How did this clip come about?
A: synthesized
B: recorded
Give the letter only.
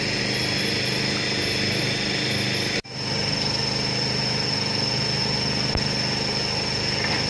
B